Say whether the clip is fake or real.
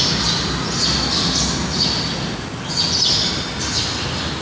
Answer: real